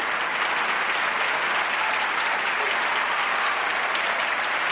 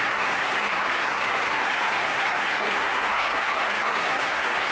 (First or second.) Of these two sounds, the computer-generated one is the second